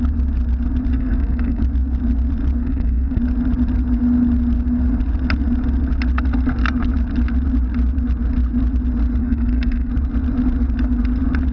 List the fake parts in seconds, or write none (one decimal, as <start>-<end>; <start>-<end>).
0.9-1.6; 2.6-3.2; 9.2-9.9